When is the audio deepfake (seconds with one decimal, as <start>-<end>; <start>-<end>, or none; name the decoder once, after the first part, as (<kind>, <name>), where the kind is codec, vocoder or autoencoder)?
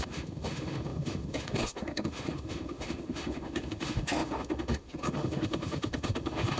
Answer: 0.0-6.6 (autoencoder, DAC-VAE)